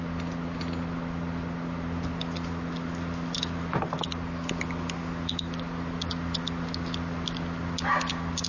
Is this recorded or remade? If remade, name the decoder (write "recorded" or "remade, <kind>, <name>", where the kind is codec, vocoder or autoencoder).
recorded